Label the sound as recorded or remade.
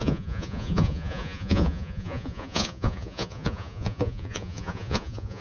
remade